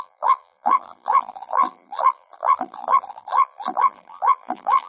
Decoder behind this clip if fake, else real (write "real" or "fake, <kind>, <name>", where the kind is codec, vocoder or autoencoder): fake, vocoder, BigVGAN v2